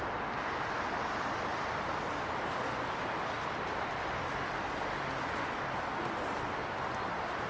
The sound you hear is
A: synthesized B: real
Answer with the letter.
B